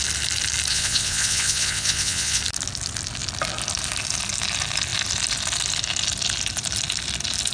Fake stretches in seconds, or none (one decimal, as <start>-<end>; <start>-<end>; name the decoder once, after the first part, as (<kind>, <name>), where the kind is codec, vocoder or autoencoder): 0.7-2.4 (vocoder, WaveNeXt)